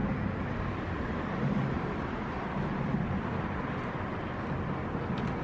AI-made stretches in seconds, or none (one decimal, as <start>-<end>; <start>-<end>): none